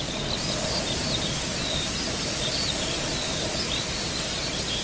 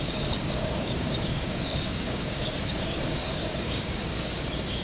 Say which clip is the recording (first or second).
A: first